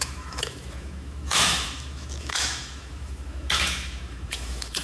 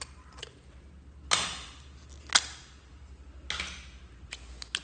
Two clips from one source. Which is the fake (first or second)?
first